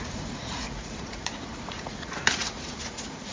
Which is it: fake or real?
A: fake